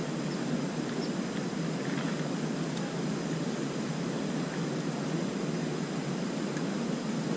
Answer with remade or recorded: recorded